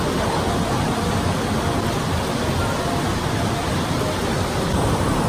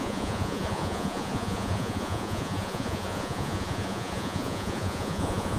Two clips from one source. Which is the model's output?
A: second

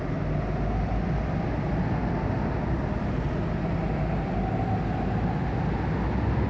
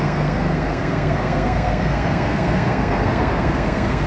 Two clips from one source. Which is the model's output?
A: second